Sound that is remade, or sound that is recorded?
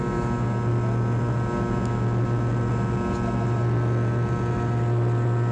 recorded